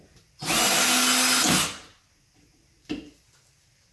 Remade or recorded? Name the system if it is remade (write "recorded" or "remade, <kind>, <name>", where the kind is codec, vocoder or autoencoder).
recorded